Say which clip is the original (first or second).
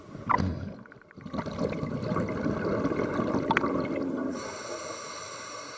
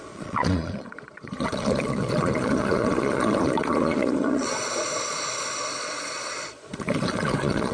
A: first